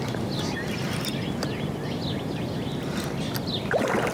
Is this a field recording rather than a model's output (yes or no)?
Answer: yes